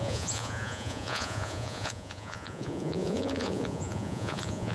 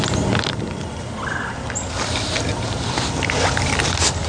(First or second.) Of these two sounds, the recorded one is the second